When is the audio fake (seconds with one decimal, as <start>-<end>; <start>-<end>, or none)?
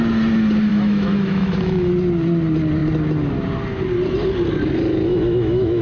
0.7-1.9; 5.1-5.8